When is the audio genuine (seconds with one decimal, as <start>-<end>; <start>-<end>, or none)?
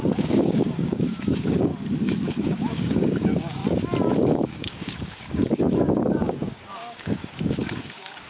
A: 1.7-2.3; 3.6-4.3